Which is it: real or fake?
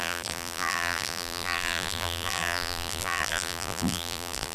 fake